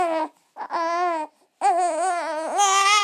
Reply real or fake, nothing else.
real